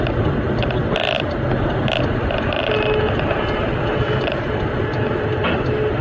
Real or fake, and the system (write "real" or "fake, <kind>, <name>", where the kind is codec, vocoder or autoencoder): real